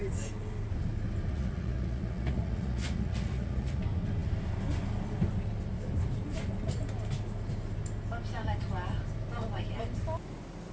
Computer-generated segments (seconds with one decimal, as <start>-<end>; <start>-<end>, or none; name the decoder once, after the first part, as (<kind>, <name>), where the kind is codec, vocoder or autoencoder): 1.3-3.8 (vocoder, Vocos)